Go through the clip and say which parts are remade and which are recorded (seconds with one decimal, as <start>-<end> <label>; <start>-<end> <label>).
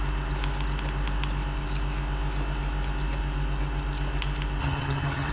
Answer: 0.0-4.6 recorded; 4.6-5.3 remade